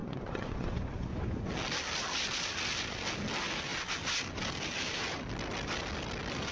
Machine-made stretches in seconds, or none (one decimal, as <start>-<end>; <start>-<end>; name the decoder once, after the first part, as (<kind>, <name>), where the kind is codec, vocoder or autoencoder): 0.0-1.5 (vocoder, Vocos)